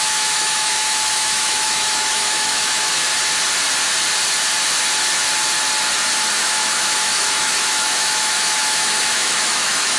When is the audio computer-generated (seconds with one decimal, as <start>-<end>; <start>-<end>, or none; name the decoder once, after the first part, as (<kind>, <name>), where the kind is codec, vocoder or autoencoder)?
0.0-3.1 (autoencoder, DAC-VAE); 6.4-10.0